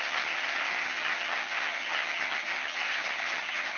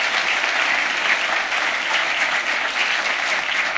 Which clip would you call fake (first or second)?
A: first